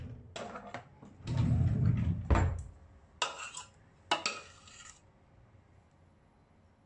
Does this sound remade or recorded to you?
recorded